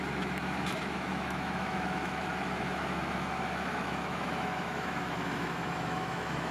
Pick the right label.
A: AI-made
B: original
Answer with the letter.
A